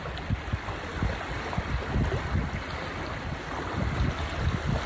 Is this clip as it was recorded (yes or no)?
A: yes